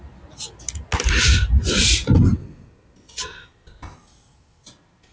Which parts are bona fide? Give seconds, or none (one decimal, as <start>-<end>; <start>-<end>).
0.0-5.1